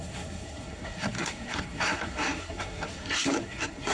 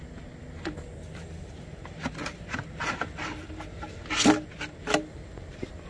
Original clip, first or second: second